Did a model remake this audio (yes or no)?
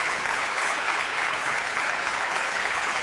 yes